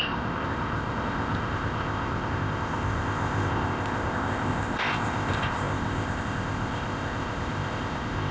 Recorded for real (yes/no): no